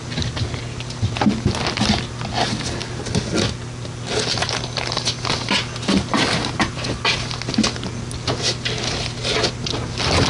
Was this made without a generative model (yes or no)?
yes